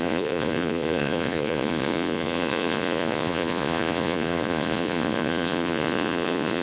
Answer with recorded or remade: remade